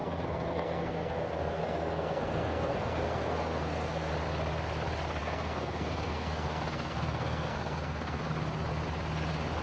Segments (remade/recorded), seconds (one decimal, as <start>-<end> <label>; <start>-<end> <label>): 0.0-4.1 remade; 4.1-5.2 recorded; 5.2-8.2 remade; 8.2-9.6 recorded